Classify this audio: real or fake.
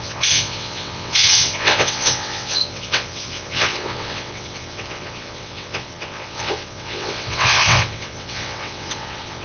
fake